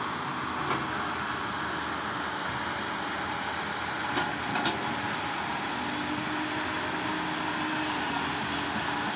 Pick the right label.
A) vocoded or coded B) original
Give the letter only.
B